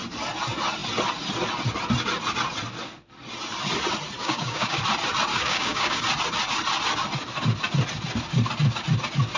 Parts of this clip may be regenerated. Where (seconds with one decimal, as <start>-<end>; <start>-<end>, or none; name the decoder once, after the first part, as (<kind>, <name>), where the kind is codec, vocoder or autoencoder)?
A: 4.2-4.8 (codec, DAC); 5.3-6.0